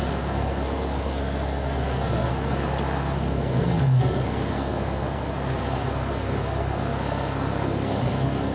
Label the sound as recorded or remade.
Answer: remade